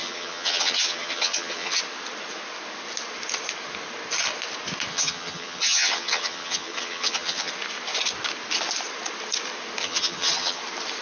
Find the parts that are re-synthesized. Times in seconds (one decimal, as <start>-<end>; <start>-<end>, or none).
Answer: 0.0-1.8; 4.9-7.5; 9.8-10.6